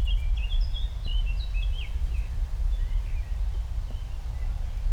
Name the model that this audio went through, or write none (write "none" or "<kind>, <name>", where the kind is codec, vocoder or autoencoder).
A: none